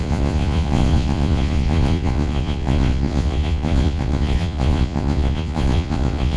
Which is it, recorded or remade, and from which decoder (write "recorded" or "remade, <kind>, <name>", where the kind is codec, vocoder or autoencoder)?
remade, vocoder, Vocos